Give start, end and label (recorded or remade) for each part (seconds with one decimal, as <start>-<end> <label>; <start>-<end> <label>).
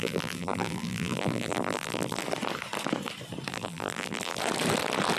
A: 0.0-2.2 remade; 2.2-3.5 recorded; 3.5-4.4 remade; 4.4-5.2 recorded